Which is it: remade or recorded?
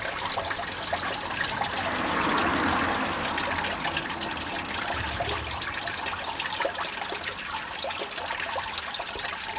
remade